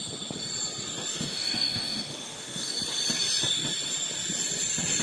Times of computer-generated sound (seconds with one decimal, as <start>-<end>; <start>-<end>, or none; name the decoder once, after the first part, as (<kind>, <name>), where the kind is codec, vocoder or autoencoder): 1.1-2.7 (autoencoder, DAC-VAE)